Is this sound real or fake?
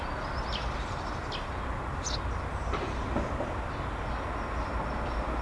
real